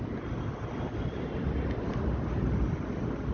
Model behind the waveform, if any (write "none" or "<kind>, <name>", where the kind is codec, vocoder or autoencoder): none